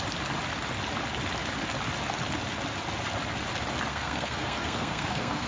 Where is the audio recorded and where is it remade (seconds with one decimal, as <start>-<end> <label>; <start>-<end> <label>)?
0.0-3.9 recorded; 3.9-5.5 remade